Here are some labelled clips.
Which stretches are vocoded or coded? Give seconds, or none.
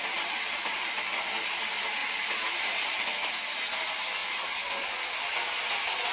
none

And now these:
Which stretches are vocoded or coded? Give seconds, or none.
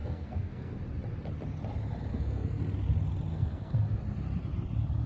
0.0-0.8 (codec, SNAC); 2.1-2.6; 3.3-4.0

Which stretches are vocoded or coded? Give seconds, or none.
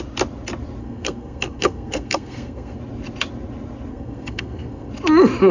0.8-2.8 (codec, SNAC); 3.9-4.9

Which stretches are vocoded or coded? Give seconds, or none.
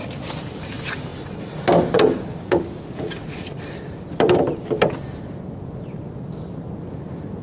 none